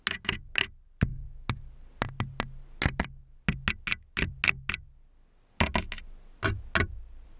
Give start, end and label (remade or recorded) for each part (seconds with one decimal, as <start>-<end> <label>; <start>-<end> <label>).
0.0-7.4 recorded